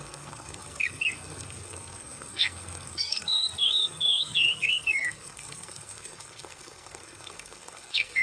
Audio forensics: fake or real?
fake